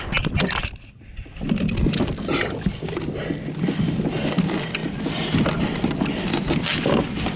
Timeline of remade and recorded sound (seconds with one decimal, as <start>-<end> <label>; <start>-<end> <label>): 0.0-7.4 recorded